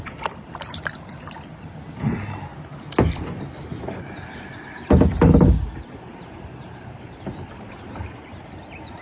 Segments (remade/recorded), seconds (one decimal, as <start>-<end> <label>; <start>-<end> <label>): 0.0-2.5 remade; 2.5-5.4 recorded; 5.4-9.0 remade